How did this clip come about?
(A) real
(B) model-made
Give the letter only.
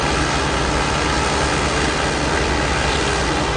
A